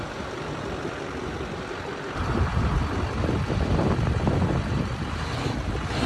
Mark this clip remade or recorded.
recorded